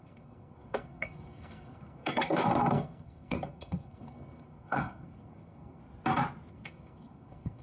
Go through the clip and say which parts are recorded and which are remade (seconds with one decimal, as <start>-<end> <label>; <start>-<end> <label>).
0.0-5.8 remade; 5.8-6.5 recorded; 6.5-7.6 remade

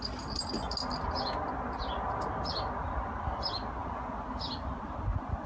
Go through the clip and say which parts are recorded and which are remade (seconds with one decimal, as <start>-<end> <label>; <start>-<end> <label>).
0.0-5.5 recorded

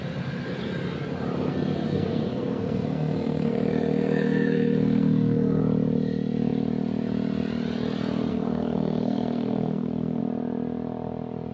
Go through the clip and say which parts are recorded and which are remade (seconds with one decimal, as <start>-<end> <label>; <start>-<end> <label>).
0.0-1.5 recorded; 1.5-5.6 remade; 5.6-8.3 recorded; 8.3-10.2 remade; 10.2-11.5 recorded

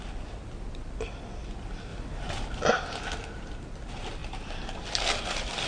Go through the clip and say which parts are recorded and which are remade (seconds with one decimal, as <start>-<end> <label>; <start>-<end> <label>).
0.0-5.7 recorded